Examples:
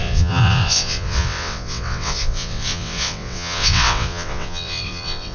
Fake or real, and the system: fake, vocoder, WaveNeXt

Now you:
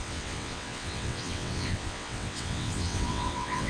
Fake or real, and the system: fake, vocoder, WaveNeXt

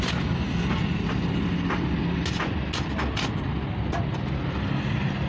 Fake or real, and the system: real